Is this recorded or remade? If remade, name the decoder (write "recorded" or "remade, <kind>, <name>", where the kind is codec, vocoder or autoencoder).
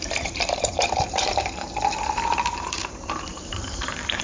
remade, vocoder, BigVGAN v2